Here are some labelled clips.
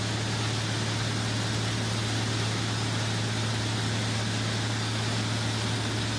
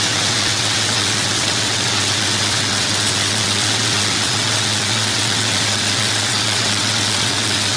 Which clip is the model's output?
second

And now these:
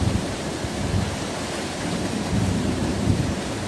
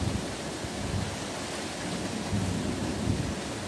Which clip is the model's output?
first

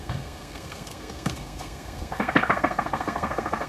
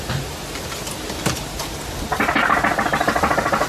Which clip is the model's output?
first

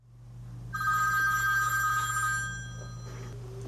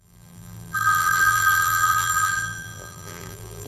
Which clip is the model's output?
second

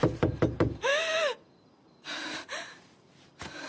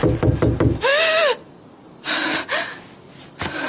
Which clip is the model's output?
first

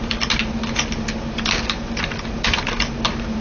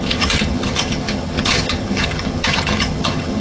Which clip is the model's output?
second